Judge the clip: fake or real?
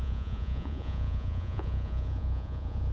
fake